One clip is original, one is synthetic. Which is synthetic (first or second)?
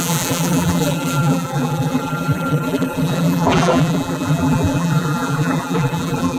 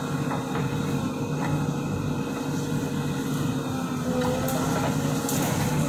first